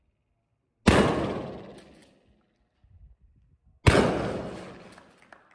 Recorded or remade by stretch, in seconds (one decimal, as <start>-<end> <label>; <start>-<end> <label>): 0.0-5.5 recorded